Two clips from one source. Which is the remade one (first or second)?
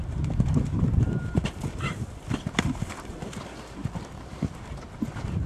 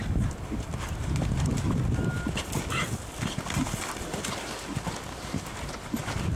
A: first